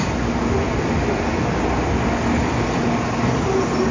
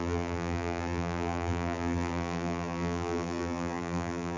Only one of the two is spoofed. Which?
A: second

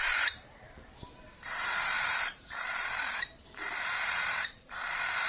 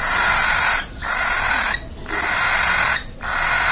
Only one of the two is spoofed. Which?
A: first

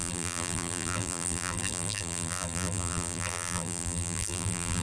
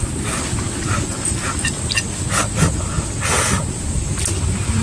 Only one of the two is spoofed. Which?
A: first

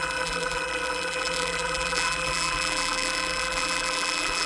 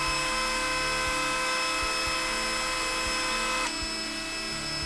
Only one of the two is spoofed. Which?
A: first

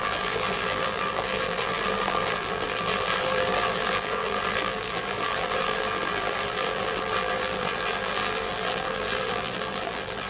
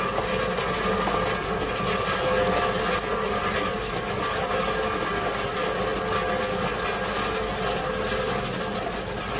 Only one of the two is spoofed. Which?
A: first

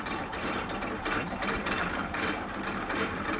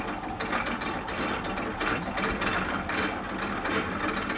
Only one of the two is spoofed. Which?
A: first